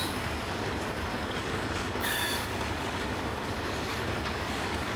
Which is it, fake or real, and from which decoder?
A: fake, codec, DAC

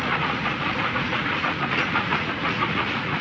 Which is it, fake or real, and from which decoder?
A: fake, vocoder, Vocos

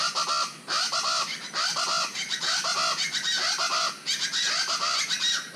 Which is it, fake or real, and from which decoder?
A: real